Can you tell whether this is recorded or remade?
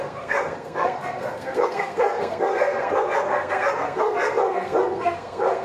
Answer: remade